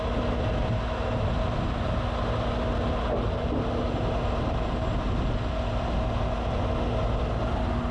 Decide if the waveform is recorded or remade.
recorded